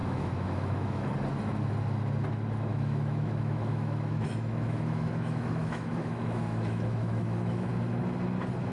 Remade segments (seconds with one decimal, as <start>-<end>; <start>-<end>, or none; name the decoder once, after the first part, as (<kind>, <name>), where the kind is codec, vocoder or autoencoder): 0.0-1.1 (autoencoder, DAC-VAE); 2.7-7.7